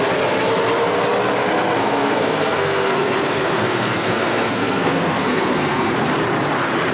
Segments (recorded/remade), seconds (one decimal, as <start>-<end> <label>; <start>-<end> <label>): 0.0-1.8 recorded; 1.8-5.9 remade; 5.9-6.9 recorded